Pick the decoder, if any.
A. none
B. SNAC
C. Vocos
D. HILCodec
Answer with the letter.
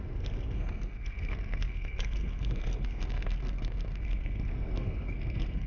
B